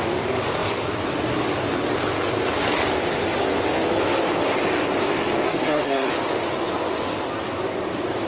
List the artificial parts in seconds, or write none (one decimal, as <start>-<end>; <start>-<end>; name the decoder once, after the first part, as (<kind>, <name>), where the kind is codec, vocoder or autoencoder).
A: 5.5-6.1 (codec, SNAC)